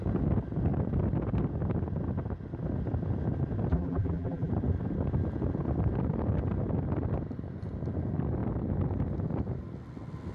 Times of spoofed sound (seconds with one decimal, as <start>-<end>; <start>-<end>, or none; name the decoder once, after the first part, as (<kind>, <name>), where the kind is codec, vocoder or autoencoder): 3.7-4.5 (vocoder, BigVGAN v2)